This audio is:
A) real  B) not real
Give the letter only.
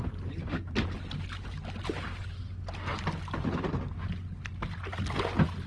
A